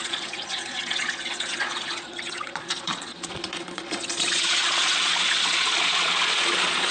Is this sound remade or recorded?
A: remade